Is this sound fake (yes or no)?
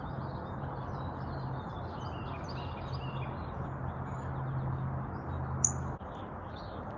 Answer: no